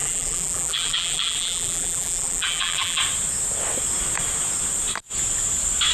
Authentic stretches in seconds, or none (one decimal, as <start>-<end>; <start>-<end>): 3.0-5.9